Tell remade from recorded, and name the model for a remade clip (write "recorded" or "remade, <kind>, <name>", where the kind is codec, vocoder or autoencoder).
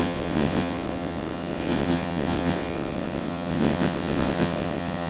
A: remade, vocoder, WaveNeXt